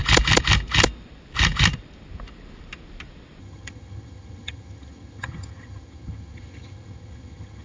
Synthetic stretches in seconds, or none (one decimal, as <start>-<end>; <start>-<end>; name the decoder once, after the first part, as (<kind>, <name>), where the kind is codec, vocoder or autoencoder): 3.4-7.6 (vocoder, HiFi-GAN)